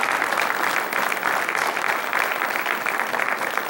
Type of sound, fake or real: real